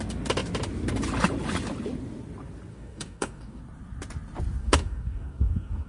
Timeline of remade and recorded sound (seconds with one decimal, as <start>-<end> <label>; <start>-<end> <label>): 0.0-2.7 recorded; 2.7-3.6 remade; 3.6-4.6 recorded; 4.6-5.9 remade